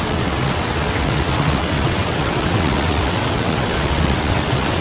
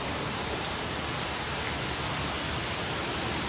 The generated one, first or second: first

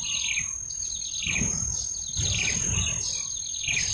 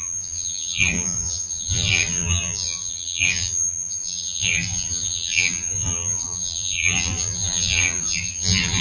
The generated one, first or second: second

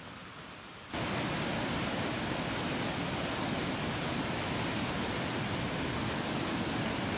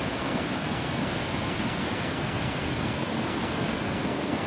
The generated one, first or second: second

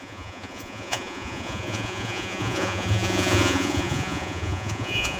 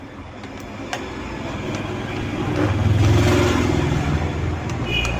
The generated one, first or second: first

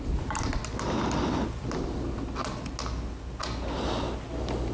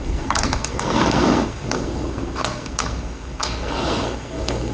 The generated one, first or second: second